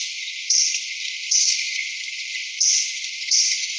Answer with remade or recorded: remade